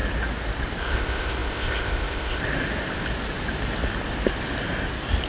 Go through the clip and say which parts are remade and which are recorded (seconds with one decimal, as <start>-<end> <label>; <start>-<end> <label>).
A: 0.0-0.8 recorded; 0.8-2.4 remade; 2.4-5.3 recorded